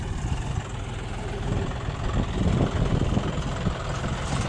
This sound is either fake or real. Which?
real